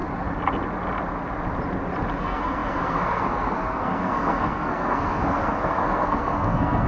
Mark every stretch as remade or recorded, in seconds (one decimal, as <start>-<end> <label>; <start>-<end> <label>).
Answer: 0.0-2.2 recorded; 2.2-6.9 remade